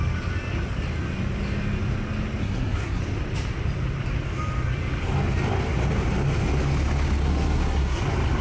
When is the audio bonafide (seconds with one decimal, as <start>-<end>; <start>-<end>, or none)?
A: 0.0-2.4; 3.0-7.2; 8.0-8.4